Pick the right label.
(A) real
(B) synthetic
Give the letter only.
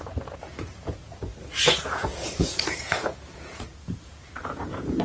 B